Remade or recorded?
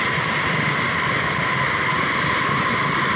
recorded